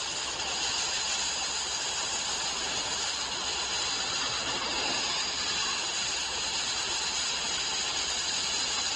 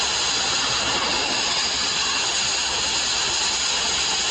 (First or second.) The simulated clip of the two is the first